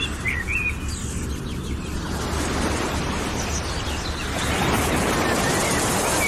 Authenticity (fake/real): real